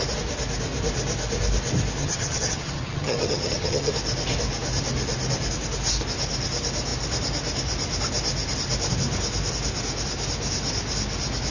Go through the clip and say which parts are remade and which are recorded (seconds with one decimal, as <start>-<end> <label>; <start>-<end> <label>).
0.0-2.0 recorded; 2.0-3.9 remade; 3.9-11.5 recorded